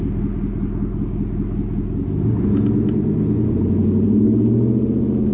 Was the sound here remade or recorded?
recorded